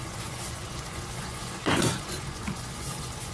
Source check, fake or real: fake